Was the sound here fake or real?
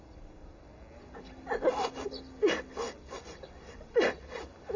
real